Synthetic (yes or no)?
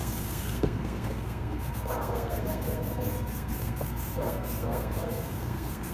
yes